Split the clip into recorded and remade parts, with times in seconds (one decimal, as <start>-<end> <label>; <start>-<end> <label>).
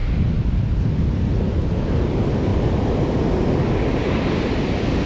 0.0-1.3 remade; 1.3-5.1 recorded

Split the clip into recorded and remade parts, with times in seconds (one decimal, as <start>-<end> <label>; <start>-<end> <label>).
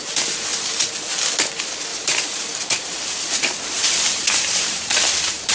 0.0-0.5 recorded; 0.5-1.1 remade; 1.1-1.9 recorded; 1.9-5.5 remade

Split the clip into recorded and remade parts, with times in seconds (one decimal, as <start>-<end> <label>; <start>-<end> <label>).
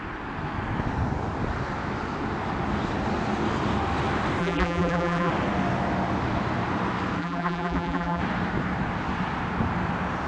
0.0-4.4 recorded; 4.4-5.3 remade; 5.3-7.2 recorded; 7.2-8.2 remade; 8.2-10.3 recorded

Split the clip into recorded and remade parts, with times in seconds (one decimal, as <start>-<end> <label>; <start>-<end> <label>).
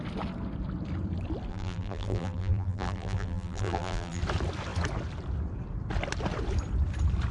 0.0-1.5 recorded; 1.5-4.2 remade; 4.2-7.3 recorded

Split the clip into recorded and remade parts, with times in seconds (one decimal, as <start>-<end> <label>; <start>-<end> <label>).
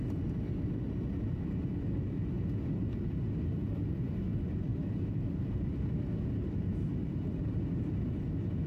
0.0-4.7 recorded; 4.7-7.9 remade; 7.9-8.7 recorded